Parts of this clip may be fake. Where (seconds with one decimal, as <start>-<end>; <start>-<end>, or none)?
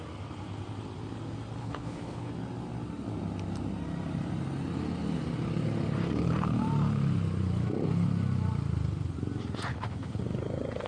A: 1.6-2.3; 9.7-10.2